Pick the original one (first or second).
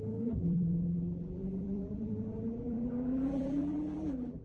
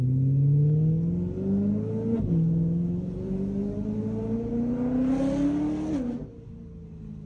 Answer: second